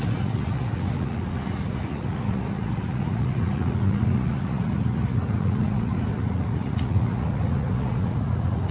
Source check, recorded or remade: remade